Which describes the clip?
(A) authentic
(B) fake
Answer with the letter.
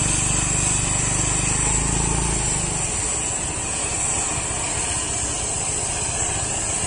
A